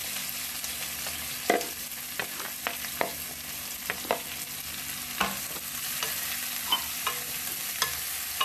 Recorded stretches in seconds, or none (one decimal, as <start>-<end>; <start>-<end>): 0.0-8.4